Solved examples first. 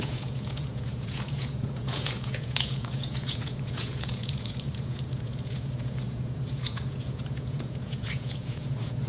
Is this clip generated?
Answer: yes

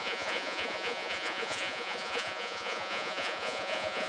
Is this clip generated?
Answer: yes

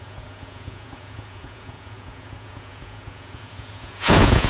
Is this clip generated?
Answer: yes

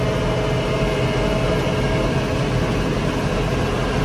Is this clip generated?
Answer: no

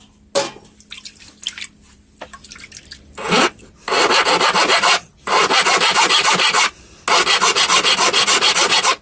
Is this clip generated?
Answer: no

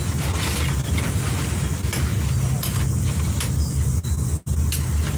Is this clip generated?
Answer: no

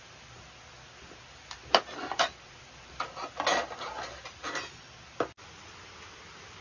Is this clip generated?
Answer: no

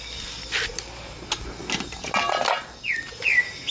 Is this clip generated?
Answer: no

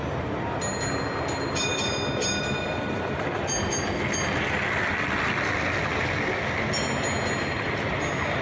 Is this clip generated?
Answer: no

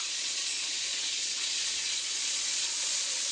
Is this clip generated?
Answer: yes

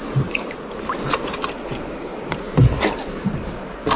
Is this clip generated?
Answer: no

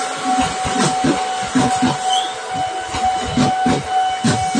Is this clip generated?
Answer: no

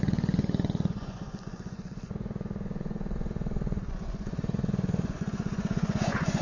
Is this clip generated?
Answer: yes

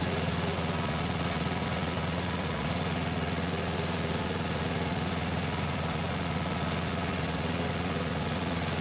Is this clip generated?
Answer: yes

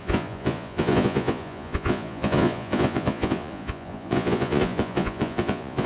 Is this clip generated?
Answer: yes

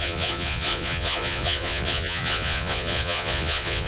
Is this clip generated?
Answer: yes